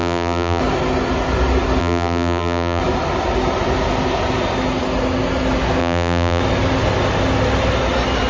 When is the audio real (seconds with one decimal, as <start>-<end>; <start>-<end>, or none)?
0.6-1.8; 2.8-5.8; 6.4-8.3